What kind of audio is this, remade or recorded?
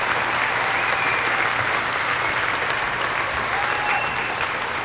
recorded